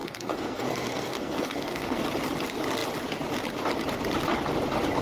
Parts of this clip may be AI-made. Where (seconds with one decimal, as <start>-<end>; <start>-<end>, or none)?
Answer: 0.0-2.0